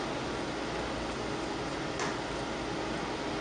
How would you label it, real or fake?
real